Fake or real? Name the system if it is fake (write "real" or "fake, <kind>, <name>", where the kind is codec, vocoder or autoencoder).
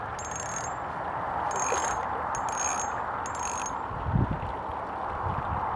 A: real